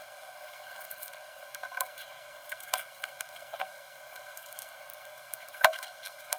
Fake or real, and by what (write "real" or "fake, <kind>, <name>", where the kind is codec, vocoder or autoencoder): fake, codec, SNAC